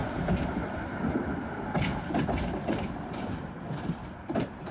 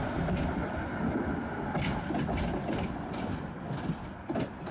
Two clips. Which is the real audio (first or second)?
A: second